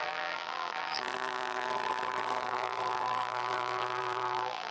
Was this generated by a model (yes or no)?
yes